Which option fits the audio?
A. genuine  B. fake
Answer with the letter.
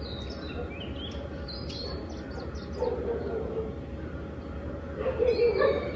A